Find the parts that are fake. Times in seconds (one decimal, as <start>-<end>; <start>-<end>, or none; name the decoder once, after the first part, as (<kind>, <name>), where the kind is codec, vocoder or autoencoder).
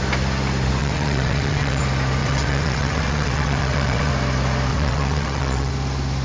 0.8-1.8 (vocoder, WaveNeXt); 2.2-4.1; 4.7-5.7